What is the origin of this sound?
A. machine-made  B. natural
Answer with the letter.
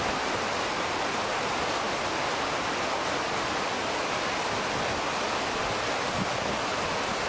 B